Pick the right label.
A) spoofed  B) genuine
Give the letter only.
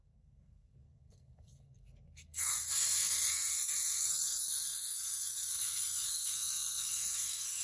A